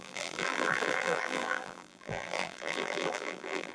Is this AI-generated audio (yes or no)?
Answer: yes